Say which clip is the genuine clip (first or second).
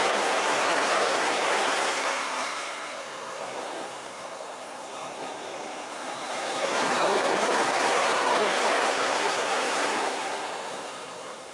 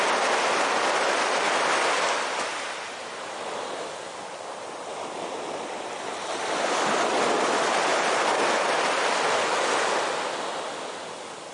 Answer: second